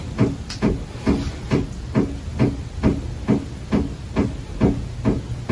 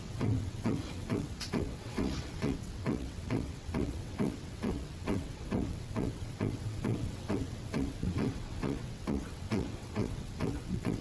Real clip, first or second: first